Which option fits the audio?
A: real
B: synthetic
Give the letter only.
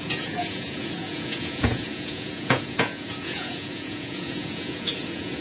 B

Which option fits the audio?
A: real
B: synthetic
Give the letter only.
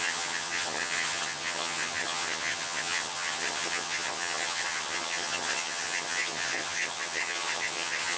B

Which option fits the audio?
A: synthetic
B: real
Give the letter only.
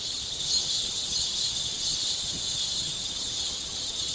A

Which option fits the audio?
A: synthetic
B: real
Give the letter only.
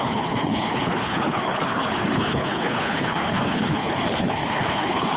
A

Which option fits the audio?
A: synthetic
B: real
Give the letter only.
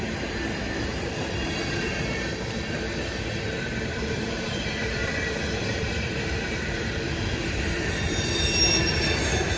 A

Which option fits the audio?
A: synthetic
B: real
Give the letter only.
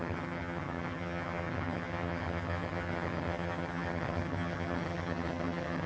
A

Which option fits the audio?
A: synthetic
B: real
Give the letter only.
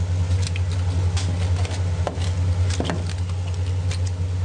B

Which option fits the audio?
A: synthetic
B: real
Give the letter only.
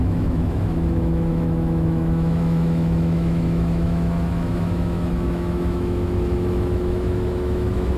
A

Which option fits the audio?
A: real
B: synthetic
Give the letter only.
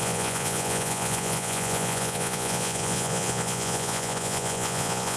B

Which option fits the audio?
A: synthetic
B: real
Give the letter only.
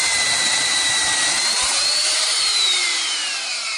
A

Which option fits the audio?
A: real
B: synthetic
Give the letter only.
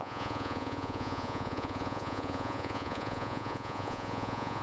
B